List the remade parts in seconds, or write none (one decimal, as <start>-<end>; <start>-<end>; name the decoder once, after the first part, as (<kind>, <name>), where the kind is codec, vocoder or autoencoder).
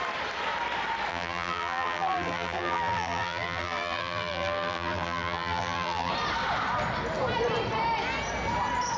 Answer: 1.1-6.1 (vocoder, BigVGAN v2)